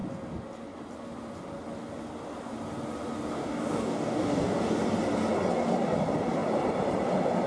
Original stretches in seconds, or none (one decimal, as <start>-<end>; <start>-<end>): 0.0-3.3; 4.7-7.5